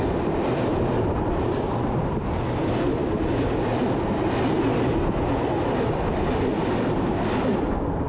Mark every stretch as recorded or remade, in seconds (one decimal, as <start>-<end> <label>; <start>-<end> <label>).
0.0-8.1 recorded